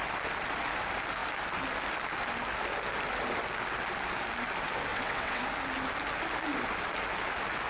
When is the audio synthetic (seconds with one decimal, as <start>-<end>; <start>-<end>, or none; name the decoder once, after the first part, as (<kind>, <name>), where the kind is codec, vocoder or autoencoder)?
4.9-5.4 (vocoder, WaveNeXt)